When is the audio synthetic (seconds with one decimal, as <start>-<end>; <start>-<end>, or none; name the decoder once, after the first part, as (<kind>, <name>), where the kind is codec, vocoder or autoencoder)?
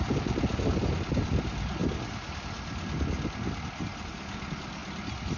none